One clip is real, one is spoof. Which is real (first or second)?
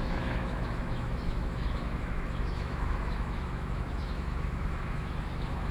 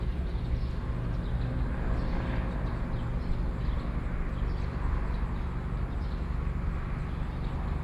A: second